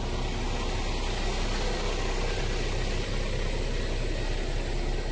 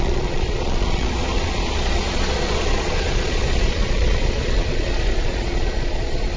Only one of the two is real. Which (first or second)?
first